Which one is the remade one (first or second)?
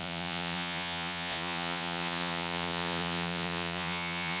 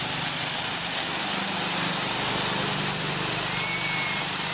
first